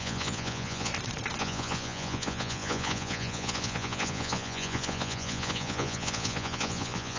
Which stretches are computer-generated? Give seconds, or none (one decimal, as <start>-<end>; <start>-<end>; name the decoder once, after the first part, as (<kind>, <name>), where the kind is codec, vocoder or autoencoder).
0.0-0.9 (vocoder, Vocos); 1.4-7.2